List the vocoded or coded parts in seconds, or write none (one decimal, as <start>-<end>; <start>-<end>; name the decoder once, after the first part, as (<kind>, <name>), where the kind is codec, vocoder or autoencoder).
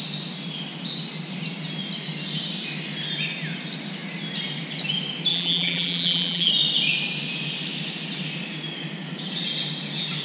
5.3-6.5 (vocoder, BigVGAN v2)